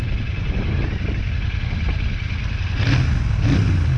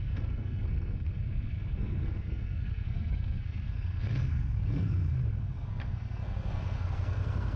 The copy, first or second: second